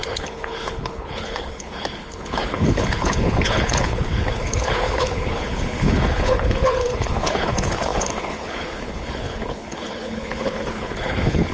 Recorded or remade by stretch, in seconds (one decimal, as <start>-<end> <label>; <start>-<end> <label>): 0.0-11.5 remade